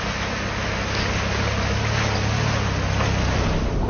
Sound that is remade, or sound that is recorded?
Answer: recorded